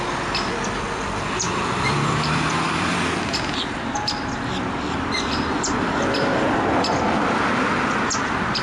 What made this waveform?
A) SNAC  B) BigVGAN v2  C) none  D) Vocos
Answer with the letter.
B